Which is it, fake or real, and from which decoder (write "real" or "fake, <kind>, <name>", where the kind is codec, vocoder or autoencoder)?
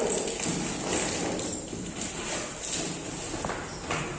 real